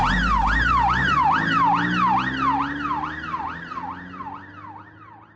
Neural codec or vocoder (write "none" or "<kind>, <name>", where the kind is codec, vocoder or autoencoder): none